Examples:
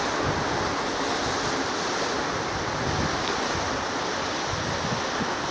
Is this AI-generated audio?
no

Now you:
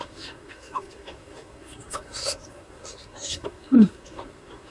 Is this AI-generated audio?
yes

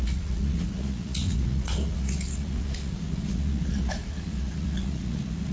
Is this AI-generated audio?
yes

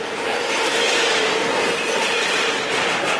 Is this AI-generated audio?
no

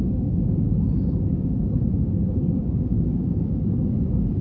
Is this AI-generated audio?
yes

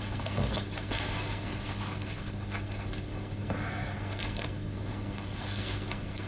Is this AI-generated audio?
yes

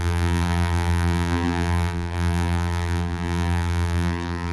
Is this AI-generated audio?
yes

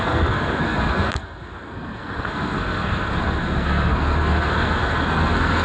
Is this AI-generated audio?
yes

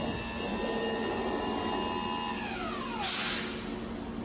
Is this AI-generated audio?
no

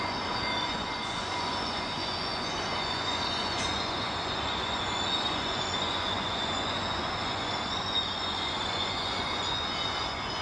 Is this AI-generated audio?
yes